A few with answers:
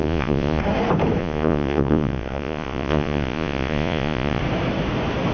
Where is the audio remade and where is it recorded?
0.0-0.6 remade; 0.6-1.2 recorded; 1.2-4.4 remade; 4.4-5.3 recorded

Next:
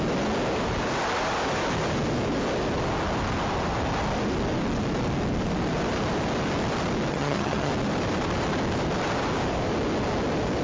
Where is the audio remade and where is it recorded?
0.0-7.1 recorded; 7.1-7.7 remade; 7.7-10.6 recorded

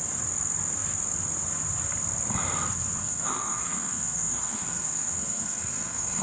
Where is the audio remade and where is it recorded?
0.0-3.0 recorded; 3.0-6.2 remade

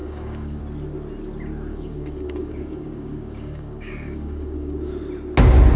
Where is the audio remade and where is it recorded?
0.0-0.6 remade; 0.6-1.7 recorded; 1.7-4.9 remade; 4.9-5.8 recorded

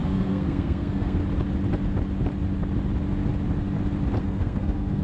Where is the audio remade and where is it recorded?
0.0-1.2 remade; 1.2-4.2 recorded; 4.2-5.0 remade

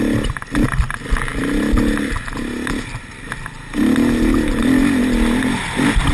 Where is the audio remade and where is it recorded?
0.0-6.1 recorded

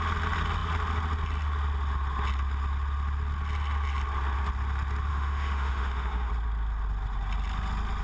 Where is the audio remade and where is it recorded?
0.0-5.1 recorded; 5.1-6.3 remade; 6.3-8.0 recorded